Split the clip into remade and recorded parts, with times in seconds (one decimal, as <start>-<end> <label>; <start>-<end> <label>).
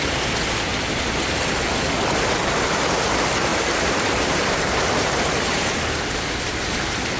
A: 0.0-0.7 recorded; 0.7-1.4 remade; 1.4-3.5 recorded; 3.5-5.8 remade; 5.8-7.2 recorded